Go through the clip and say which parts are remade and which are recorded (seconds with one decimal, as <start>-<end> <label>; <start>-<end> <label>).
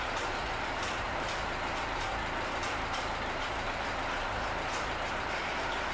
0.0-2.1 remade; 2.1-5.9 recorded